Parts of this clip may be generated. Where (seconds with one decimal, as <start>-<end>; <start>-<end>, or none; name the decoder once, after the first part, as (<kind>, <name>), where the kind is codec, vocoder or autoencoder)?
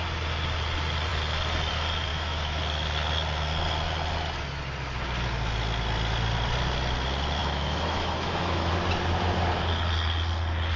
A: 2.1-2.6 (autoencoder, DAC-VAE); 7.4-8.7